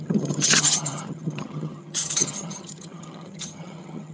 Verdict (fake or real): fake